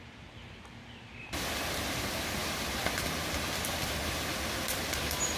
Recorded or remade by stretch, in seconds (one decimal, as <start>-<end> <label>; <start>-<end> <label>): 0.0-5.4 recorded